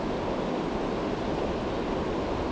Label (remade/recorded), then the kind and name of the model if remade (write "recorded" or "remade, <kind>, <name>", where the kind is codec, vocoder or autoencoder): recorded